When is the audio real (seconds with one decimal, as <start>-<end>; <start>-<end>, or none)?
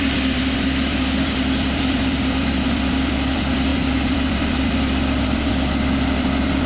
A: none